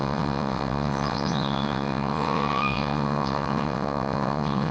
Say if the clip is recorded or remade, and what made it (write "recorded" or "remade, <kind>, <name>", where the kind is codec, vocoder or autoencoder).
remade, vocoder, WaveNeXt